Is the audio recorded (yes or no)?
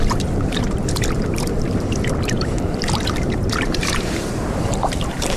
no